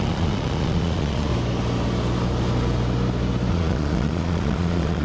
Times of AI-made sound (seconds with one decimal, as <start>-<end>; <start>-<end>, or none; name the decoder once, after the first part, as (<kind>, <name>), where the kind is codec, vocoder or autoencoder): 0.0-1.3 (vocoder, Vocos); 3.5-5.0

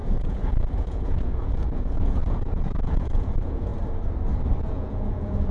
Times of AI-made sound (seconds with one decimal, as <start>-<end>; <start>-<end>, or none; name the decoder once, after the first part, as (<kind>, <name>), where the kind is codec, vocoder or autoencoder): 0.0-3.7 (vocoder, Vocos); 4.6-5.5

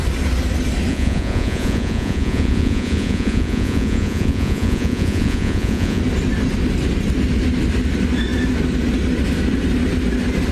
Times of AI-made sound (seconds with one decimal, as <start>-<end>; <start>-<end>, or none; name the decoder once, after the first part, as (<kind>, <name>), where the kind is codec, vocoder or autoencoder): 0.9-6.0 (vocoder, Vocos)

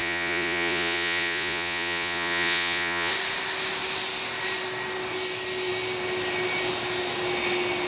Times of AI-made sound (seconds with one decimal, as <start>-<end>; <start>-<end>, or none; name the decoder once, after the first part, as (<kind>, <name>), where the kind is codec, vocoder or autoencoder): 0.0-3.1 (vocoder, Vocos)

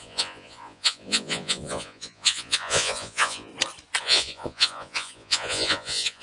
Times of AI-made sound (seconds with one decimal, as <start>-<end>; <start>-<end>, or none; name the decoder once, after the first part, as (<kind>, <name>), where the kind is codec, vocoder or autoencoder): 0.0-3.5 (vocoder, Vocos); 4.0-6.2

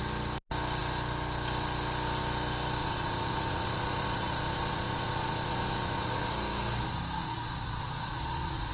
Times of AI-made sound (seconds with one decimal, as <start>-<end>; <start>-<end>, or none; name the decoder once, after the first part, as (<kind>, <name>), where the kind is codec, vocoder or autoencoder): 2.8-6.3 (vocoder, Vocos); 7.2-8.7